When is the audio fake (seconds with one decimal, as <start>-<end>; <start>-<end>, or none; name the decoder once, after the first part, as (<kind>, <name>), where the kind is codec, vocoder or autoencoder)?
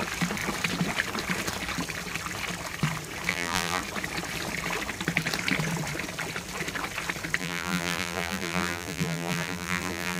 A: 3.3-3.8 (vocoder, BigVGAN v2); 7.4-10.2